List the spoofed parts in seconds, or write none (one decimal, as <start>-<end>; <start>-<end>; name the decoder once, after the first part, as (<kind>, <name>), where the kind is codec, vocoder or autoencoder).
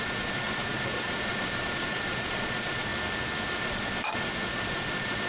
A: 0.0-2.9 (vocoder, Vocos); 3.6-5.3